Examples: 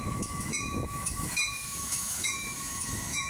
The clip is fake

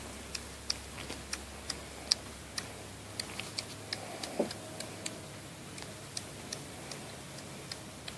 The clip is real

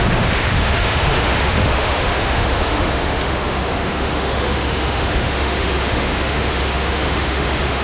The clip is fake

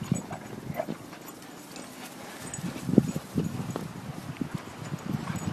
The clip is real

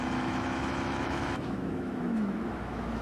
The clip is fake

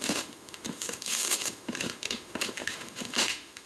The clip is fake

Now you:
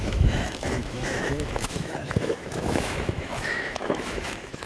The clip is fake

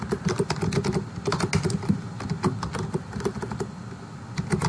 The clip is real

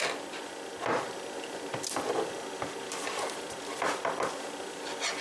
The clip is real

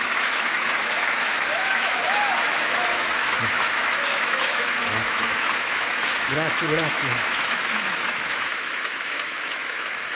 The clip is fake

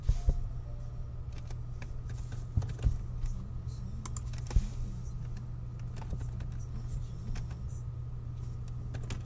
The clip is real